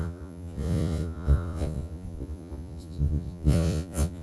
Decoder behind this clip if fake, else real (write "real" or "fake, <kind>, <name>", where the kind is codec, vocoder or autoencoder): fake, vocoder, Vocos